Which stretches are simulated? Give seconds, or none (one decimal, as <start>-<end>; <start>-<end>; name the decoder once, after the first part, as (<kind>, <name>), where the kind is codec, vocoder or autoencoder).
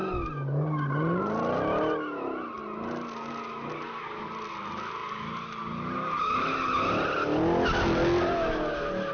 none